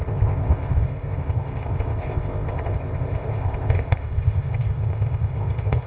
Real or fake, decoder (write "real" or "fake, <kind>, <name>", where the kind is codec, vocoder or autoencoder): fake, codec, ZipCodec